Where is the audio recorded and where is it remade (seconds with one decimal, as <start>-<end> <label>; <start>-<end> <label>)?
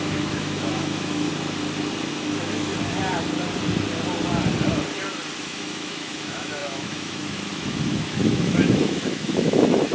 0.0-1.3 remade; 1.3-2.1 recorded; 2.1-2.7 remade; 2.7-5.4 recorded; 5.4-9.9 remade